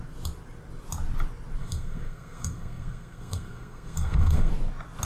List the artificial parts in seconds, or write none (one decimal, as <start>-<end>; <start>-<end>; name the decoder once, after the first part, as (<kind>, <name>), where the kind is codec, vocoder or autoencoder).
1.6-4.5 (codec, SNAC)